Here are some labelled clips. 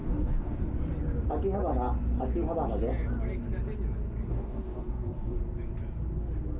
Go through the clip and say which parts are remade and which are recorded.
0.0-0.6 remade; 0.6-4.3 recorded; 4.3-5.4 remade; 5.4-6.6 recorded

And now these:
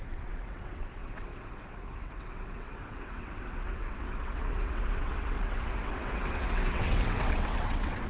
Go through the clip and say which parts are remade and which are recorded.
0.0-8.1 remade